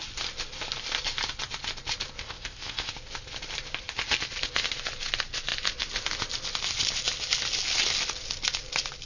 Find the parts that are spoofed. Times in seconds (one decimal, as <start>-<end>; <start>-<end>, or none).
2.2-2.9